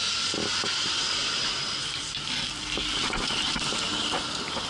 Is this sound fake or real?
real